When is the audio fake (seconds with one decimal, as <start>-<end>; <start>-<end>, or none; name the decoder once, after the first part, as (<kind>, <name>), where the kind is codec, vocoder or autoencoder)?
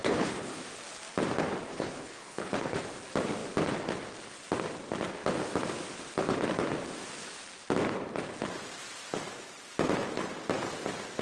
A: 0.0-0.6 (codec, HILCodec); 1.7-2.8